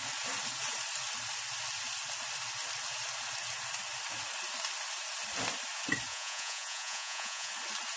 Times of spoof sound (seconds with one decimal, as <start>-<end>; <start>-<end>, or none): 6.1-7.5